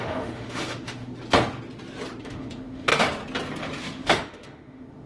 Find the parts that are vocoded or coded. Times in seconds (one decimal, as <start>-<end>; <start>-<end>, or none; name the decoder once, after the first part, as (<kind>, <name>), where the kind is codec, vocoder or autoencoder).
0.0-1.1 (autoencoder, DAC-VAE); 2.2-2.9; 3.8-5.1